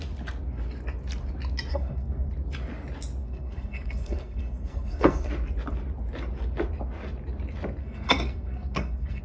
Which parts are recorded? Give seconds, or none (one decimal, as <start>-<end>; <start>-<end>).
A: 0.0-1.7; 2.3-3.2; 5.3-7.8

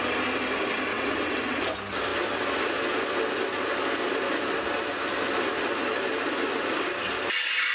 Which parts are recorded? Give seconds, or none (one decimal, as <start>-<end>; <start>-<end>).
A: 0.0-0.9; 1.6-7.7